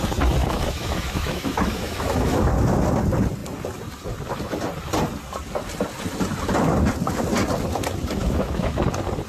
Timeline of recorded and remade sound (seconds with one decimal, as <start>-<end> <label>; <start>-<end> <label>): 0.0-0.4 recorded; 0.4-2.5 remade; 2.5-8.2 recorded; 8.2-8.8 remade; 8.8-9.3 recorded